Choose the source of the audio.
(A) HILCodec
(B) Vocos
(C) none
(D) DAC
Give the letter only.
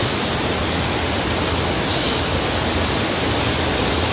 C